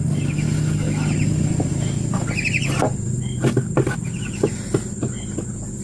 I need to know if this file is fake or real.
real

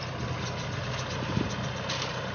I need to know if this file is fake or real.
real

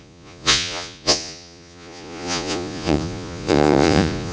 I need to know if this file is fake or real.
fake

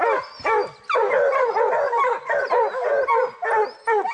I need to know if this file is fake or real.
real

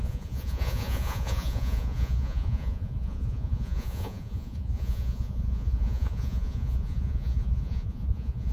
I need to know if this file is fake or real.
fake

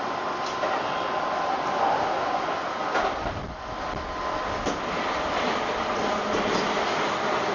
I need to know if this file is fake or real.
real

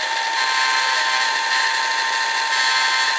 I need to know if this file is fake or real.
real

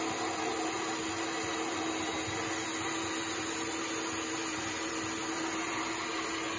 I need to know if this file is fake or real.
real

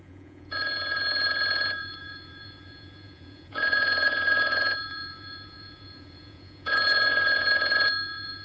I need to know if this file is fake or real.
fake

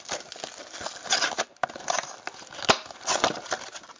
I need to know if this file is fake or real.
real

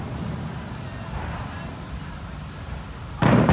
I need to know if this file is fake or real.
real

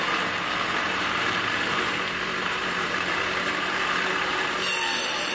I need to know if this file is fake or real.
fake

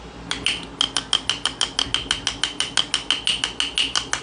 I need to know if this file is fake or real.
real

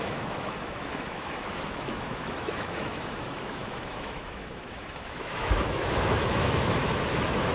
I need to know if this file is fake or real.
fake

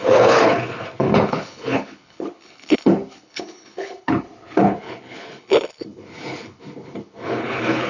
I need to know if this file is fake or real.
fake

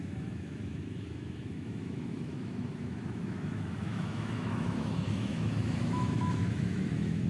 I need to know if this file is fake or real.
fake